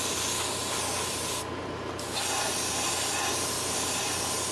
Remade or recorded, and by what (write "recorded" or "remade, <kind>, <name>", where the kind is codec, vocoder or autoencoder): recorded